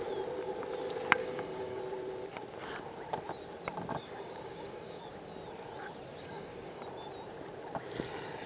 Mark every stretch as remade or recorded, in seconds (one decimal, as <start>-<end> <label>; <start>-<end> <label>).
0.0-1.2 recorded; 1.2-1.8 remade; 1.8-3.9 recorded; 3.9-5.0 remade; 5.0-6.2 recorded; 6.2-6.8 remade; 6.8-8.5 recorded